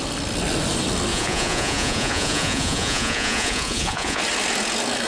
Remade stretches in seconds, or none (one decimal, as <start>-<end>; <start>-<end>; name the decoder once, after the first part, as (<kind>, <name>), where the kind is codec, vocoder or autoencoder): 1.1-4.2 (vocoder, Vocos)